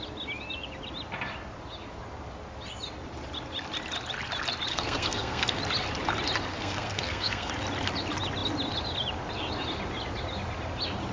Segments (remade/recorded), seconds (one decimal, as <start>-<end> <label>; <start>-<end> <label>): 0.0-4.7 recorded; 4.7-5.6 remade; 5.6-6.5 recorded; 6.5-7.5 remade; 7.5-11.1 recorded